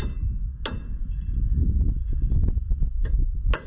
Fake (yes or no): no